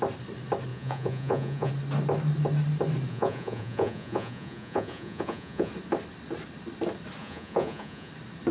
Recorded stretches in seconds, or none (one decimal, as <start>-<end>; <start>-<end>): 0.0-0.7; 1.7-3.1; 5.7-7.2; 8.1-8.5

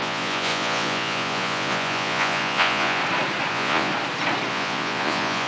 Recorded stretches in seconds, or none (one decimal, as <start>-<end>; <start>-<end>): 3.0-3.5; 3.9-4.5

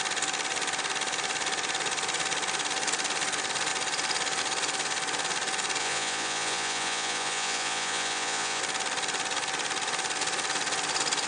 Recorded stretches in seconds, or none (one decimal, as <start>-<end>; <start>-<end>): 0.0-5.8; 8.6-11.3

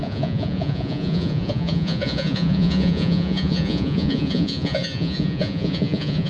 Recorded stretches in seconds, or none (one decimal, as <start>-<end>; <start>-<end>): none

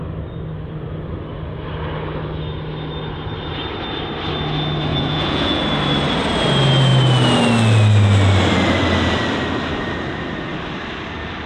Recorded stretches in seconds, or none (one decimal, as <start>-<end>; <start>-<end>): 0.0-4.9; 5.6-11.5

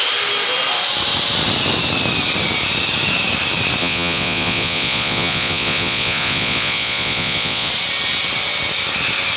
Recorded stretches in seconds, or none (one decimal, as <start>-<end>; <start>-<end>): 0.0-3.8; 7.7-9.4

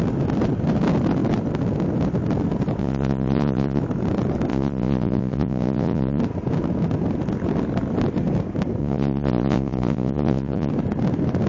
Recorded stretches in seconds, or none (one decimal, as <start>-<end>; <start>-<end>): 0.0-2.8; 3.8-4.5; 6.2-8.8; 10.7-11.5

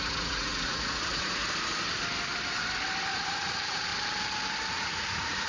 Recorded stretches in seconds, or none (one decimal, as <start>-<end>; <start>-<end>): 1.4-3.1; 3.9-4.7